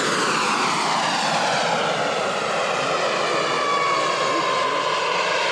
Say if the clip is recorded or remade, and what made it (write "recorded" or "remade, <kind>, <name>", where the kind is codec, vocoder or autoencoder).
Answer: recorded